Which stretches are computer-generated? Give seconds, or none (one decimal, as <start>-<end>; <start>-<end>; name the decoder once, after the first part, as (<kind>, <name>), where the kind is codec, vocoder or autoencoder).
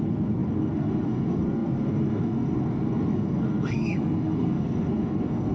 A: 0.0-5.5 (codec, SNAC)